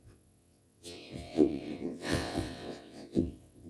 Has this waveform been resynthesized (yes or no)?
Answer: yes